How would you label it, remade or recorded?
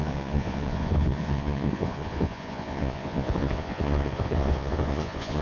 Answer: remade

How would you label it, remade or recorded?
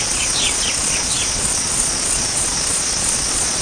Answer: remade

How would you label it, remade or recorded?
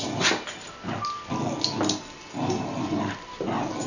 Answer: recorded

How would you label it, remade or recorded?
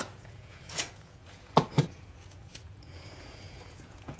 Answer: remade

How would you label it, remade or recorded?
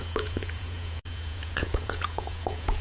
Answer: remade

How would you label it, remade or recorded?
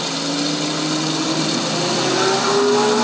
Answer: recorded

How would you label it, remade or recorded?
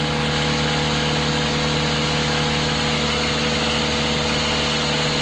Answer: recorded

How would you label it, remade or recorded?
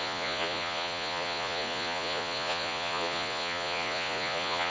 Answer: remade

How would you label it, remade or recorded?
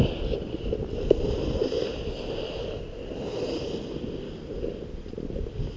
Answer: recorded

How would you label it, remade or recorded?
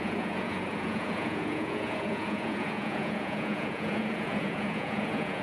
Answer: remade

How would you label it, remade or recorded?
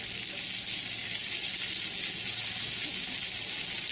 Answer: recorded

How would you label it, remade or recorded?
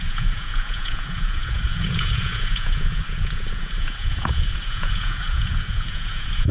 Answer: remade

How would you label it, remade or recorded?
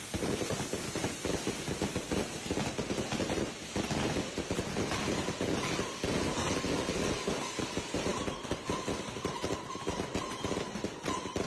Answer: recorded